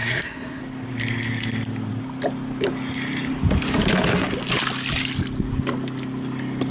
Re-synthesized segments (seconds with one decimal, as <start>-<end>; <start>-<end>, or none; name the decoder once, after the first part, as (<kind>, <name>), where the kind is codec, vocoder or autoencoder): 0.0-0.6 (codec, SNAC)